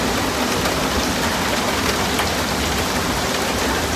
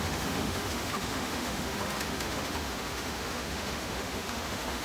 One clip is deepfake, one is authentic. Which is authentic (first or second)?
first